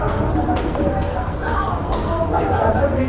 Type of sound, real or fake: fake